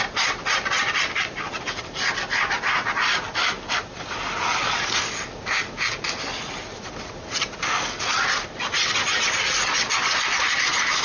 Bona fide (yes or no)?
yes